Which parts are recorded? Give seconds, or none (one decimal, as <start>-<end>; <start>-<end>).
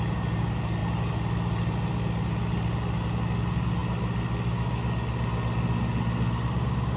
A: 0.0-7.0